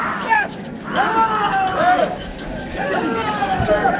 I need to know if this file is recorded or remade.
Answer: remade